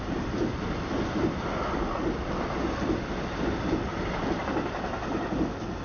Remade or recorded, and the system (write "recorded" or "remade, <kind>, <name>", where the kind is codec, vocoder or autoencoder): recorded